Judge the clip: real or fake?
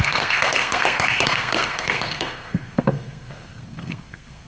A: fake